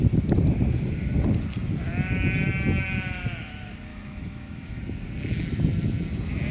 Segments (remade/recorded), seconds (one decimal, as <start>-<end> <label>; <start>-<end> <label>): 0.0-3.9 recorded; 3.9-4.8 remade; 4.8-6.5 recorded